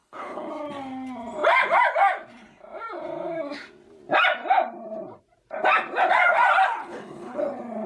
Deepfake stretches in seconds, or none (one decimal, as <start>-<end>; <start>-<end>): 0.0-0.5; 6.8-7.4